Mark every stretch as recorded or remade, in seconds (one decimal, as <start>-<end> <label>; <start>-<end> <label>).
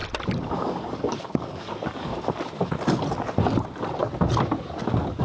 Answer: 0.0-0.5 recorded; 0.5-2.1 remade; 2.1-5.2 recorded